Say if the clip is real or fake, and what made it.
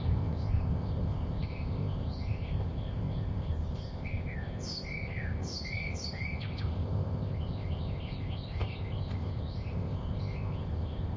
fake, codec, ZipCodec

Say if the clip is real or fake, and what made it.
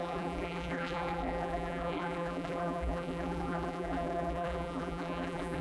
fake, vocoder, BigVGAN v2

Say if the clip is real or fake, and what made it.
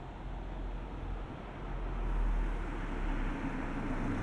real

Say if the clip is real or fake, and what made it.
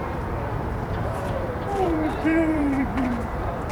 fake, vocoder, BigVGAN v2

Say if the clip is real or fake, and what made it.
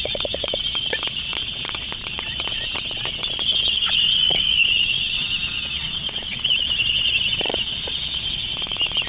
fake, vocoder, Vocos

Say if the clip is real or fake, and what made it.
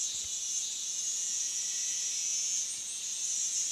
fake, vocoder, Vocos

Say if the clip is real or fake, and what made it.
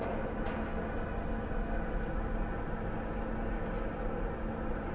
real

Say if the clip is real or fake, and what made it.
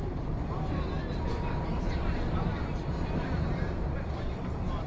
real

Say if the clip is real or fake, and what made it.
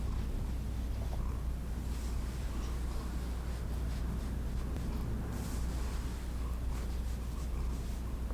real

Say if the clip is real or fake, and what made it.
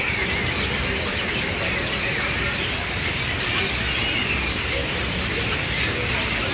real